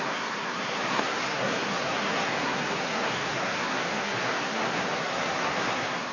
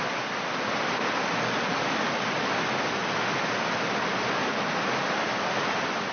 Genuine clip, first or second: second